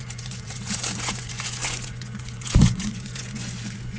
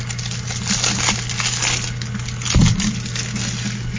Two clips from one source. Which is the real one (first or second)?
second